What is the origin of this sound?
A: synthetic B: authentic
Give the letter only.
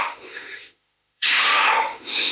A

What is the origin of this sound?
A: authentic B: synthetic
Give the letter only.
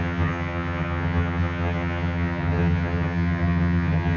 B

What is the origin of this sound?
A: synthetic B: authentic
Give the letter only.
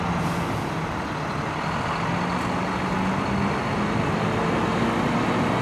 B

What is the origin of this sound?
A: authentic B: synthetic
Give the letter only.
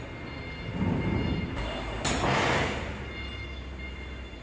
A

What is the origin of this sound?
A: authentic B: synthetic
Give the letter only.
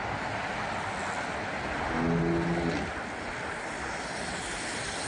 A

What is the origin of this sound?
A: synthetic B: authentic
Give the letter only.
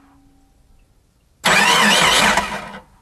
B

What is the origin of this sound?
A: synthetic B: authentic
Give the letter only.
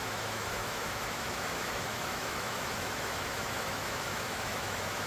A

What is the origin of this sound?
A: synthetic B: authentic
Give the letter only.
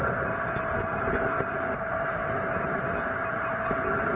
B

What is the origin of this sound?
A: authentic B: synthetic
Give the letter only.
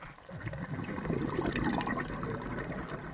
A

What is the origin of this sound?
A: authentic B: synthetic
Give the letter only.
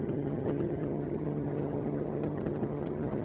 B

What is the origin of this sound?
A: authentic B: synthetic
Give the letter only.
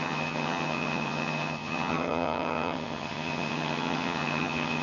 B